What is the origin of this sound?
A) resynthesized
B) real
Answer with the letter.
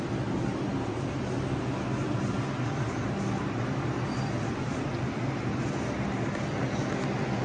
B